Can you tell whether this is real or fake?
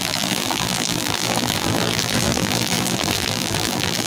fake